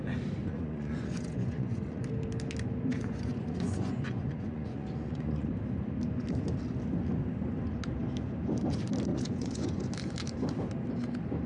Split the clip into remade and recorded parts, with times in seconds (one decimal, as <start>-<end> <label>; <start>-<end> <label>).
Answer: 0.0-0.4 recorded; 0.4-2.0 remade; 2.0-2.9 recorded; 2.9-5.5 remade; 5.5-9.1 recorded; 9.1-9.8 remade; 9.8-11.5 recorded

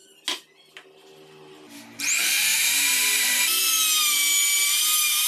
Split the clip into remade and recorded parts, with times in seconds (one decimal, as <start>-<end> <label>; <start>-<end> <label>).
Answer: 0.0-2.5 recorded; 2.5-3.4 remade; 3.4-5.3 recorded